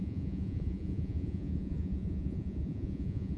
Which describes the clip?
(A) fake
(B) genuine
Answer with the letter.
A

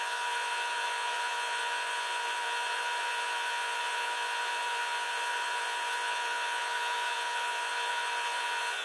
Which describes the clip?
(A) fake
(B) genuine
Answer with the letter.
A